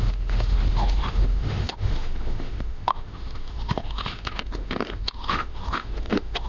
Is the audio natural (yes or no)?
no